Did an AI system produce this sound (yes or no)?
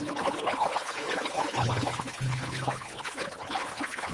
yes